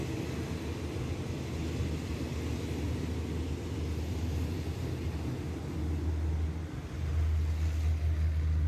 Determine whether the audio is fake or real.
real